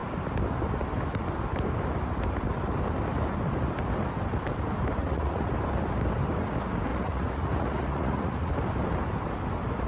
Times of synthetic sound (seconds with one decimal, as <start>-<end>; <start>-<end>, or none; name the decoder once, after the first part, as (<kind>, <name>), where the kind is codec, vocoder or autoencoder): 5.0-5.5 (vocoder, Vocos); 6.9-8.5